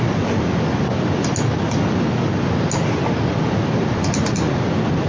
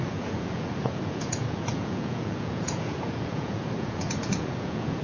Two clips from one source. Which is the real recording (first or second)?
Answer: first